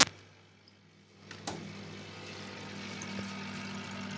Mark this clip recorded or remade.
recorded